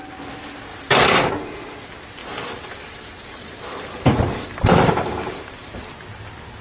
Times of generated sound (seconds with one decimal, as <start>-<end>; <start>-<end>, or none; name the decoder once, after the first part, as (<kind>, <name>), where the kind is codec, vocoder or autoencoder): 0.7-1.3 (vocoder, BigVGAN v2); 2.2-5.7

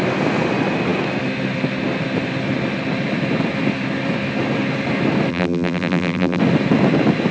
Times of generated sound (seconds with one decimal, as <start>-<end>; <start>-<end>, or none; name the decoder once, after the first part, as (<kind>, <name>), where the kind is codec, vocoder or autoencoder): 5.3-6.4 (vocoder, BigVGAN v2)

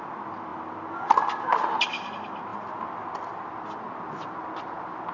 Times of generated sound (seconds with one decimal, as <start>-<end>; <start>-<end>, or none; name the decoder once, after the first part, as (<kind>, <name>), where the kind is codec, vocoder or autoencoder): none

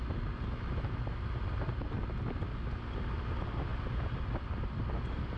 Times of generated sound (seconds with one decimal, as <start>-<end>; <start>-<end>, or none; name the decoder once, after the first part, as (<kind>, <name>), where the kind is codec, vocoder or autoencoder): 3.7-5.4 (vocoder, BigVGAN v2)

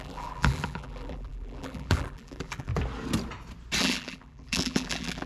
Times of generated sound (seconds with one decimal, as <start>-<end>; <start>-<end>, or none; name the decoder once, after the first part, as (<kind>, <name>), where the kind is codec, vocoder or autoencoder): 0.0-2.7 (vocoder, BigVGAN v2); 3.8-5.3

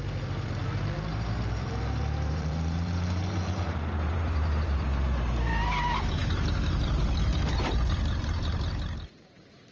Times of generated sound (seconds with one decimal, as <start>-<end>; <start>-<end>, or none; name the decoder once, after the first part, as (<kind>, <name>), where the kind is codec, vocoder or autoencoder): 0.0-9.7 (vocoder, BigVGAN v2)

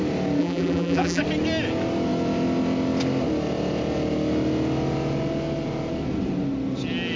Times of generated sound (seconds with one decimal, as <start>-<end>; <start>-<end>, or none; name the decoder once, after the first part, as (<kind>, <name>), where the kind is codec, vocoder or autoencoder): 0.4-1.2 (vocoder, BigVGAN v2)